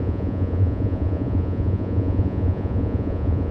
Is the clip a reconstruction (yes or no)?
yes